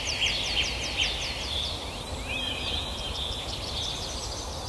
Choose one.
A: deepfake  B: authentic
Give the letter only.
B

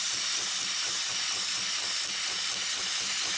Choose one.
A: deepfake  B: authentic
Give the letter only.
B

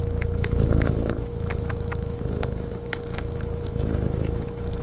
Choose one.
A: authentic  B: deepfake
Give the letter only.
B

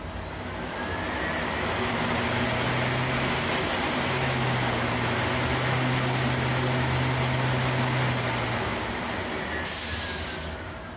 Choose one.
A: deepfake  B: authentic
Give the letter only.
B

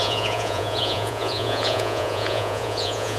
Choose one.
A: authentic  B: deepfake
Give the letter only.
B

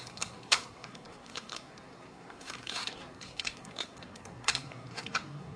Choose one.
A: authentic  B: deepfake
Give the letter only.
B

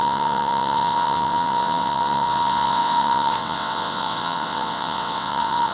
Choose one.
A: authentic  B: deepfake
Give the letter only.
B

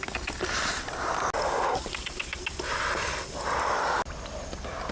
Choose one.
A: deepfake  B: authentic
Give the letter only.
B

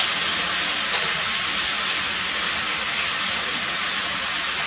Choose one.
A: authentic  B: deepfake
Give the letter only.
A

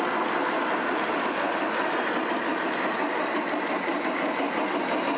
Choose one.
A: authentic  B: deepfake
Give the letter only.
A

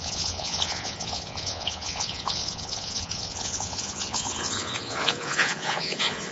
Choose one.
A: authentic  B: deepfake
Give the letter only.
B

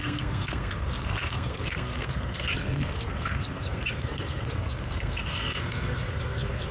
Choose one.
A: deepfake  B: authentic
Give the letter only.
A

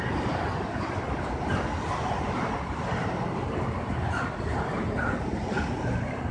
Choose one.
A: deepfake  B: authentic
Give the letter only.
B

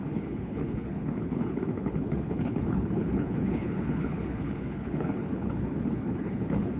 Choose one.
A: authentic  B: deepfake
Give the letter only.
B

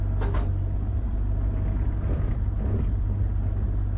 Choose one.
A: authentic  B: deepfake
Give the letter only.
A